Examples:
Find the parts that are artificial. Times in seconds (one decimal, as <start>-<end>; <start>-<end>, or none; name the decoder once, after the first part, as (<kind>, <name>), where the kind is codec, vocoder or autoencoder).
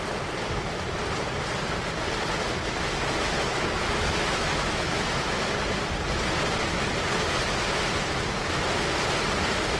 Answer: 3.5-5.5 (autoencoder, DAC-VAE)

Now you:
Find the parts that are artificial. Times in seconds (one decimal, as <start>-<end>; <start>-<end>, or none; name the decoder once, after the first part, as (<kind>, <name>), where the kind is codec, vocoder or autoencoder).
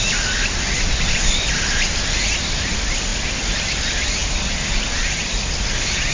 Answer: none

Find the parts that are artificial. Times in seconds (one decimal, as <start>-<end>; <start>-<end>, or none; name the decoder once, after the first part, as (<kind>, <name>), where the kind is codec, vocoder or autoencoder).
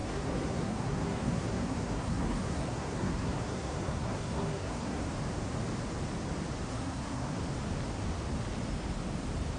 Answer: 0.0-5.1 (codec, SNAC); 6.7-7.4